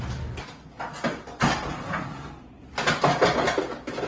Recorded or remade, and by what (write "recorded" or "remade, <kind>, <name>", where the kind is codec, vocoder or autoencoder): recorded